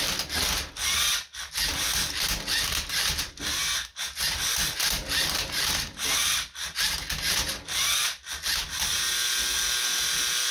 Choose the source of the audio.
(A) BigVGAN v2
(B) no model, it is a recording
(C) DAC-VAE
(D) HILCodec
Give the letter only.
B